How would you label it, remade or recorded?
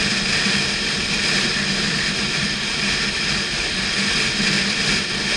recorded